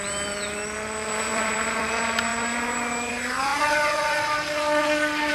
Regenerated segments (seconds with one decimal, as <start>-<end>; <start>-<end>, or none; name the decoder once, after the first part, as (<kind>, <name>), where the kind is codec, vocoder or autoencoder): 1.3-1.9 (vocoder, BigVGAN v2)